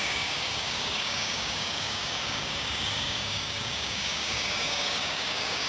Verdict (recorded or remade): remade